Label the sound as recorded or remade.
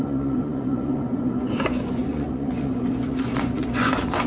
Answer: remade